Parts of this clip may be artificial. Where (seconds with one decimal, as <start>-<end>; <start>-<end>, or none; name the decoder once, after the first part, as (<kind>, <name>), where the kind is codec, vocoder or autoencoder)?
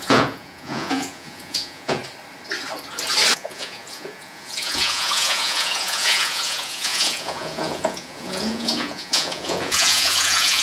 0.0-2.0 (vocoder, Vocos); 3.3-10.6